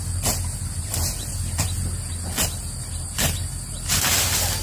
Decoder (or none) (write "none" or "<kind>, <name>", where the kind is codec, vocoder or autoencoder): none